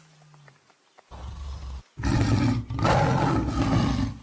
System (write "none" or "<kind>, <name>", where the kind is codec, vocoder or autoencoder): none